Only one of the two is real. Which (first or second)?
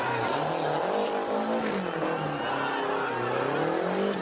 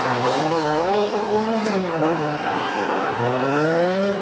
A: first